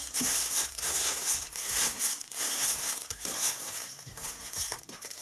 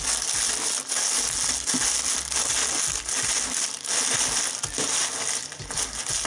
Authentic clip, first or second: second